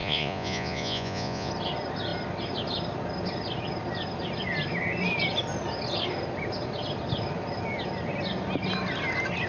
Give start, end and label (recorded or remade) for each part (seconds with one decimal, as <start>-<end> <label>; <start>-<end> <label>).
0.0-1.5 remade; 1.5-9.5 recorded